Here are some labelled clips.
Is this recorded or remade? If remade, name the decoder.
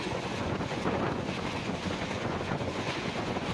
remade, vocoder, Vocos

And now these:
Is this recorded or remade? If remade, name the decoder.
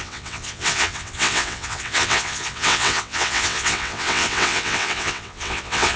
remade, vocoder, WaveNeXt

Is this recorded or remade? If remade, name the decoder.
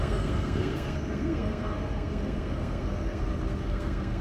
remade, codec, SNAC